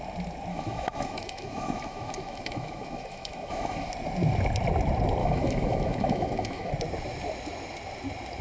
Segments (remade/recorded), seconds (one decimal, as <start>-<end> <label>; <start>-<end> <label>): 0.0-0.5 recorded; 0.5-3.9 remade; 3.9-5.2 recorded; 5.2-6.7 remade; 6.7-8.4 recorded